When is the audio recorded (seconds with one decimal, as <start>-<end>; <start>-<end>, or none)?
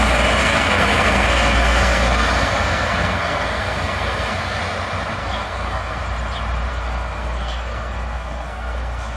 0.0-0.4; 4.6-5.2; 6.0-6.7